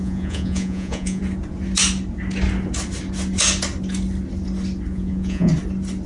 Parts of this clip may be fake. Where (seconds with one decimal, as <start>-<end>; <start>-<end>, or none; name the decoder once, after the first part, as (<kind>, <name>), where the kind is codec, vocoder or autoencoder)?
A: 0.0-1.2 (vocoder, Vocos); 4.9-5.5